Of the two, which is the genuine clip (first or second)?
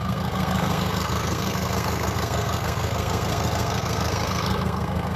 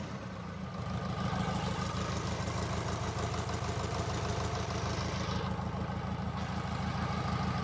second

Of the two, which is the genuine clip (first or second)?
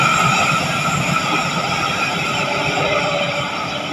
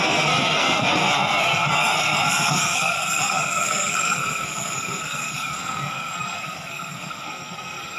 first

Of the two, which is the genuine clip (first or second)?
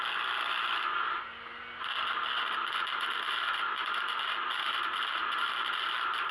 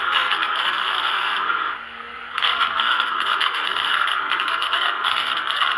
first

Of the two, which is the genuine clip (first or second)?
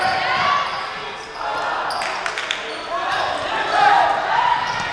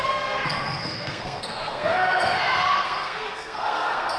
first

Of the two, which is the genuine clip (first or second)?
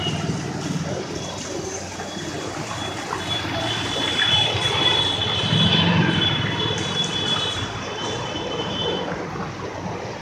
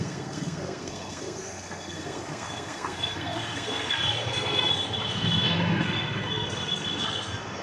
first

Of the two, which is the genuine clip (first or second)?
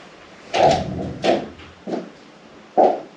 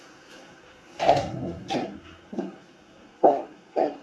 first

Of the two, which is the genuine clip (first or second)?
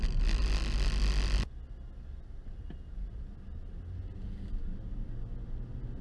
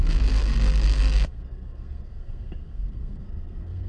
first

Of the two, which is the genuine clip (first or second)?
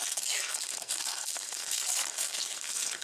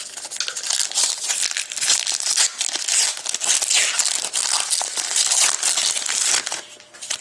second